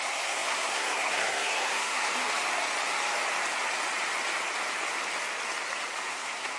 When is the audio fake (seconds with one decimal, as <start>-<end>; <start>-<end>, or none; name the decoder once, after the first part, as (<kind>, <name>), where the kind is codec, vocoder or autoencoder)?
0.0-2.0 (codec, SNAC); 6.0-6.6